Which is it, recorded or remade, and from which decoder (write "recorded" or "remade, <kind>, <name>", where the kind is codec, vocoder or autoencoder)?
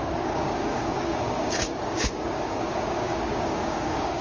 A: remade, codec, DAC